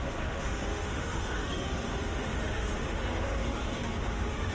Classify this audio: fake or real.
fake